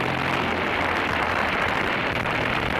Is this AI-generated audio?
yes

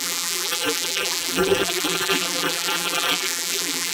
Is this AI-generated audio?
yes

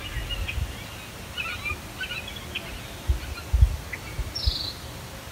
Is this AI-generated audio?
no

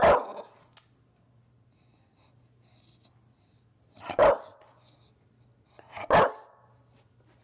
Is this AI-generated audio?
no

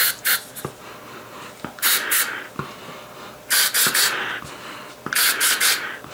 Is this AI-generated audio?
no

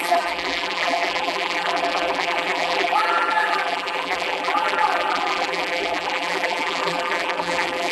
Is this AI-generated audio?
yes